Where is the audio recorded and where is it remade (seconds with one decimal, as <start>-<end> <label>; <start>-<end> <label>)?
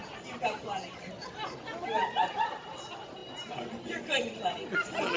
0.0-5.2 recorded